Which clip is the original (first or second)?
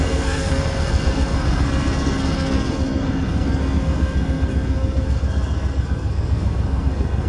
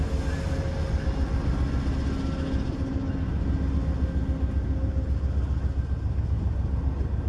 second